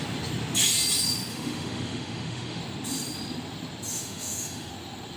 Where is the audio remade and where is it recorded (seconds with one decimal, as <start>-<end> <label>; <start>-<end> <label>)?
0.0-1.3 recorded; 1.3-2.6 remade; 2.6-3.9 recorded; 3.9-4.7 remade; 4.7-5.2 recorded